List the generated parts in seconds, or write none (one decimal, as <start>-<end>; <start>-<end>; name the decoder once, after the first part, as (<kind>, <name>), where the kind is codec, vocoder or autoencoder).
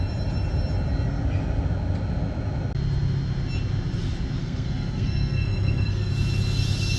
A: 4.4-6.1 (codec, SNAC)